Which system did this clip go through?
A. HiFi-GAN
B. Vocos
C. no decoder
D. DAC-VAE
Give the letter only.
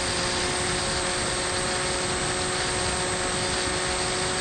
C